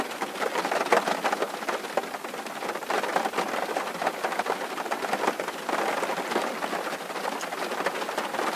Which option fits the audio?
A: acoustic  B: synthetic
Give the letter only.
A